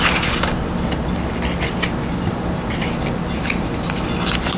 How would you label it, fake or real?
real